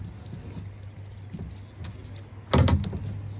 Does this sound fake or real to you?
real